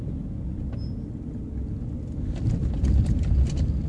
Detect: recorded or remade recorded